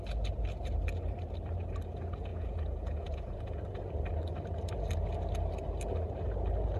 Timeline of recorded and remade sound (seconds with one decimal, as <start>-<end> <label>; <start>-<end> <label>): 0.0-2.3 recorded; 2.3-3.6 remade; 3.6-6.8 recorded